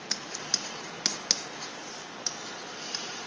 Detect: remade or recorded recorded